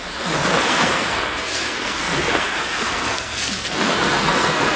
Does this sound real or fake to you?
fake